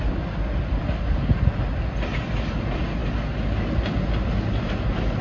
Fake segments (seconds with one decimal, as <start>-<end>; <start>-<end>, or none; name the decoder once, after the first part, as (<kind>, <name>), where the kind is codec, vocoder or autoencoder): none